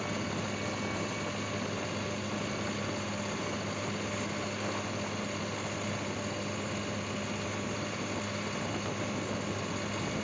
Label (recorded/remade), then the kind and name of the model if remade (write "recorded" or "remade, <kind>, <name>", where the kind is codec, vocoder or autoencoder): recorded